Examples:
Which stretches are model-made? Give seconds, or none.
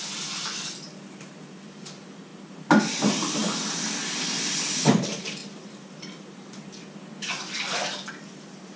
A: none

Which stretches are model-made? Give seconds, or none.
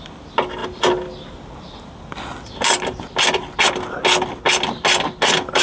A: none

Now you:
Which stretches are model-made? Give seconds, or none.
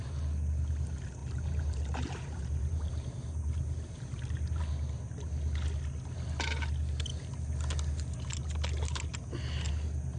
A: 1.2-4.6 (vocoder, BigVGAN v2)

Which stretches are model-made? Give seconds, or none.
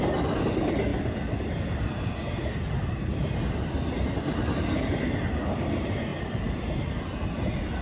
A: 6.1-6.6 (vocoder, BigVGAN v2)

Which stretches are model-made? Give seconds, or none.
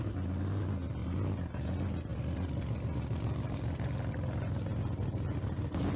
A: 2.1-6.0 (vocoder, BigVGAN v2)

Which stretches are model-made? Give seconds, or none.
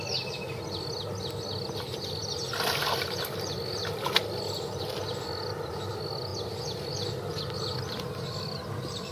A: none